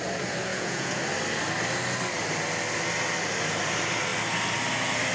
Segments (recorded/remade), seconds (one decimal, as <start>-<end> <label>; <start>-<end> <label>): 0.0-0.5 recorded; 0.5-1.0 remade; 1.0-5.1 recorded